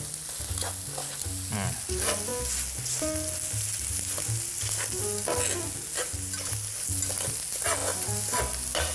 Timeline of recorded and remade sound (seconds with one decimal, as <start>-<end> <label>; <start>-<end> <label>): 0.0-8.9 recorded